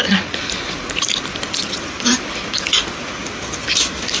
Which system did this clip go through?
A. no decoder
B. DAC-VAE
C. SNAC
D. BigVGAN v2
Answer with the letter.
A